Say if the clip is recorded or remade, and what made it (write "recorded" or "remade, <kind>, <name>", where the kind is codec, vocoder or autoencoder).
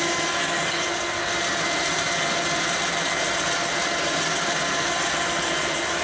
recorded